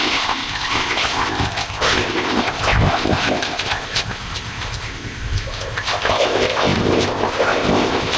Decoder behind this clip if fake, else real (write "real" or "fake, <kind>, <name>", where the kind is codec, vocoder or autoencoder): fake, codec, ZipCodec